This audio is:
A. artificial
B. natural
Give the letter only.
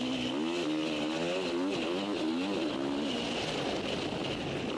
B